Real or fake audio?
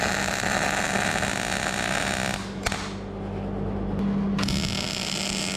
real